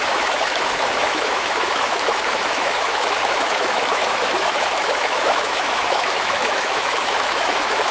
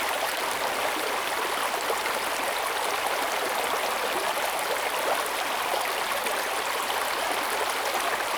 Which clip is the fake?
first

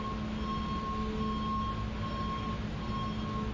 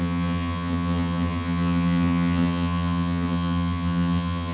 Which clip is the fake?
second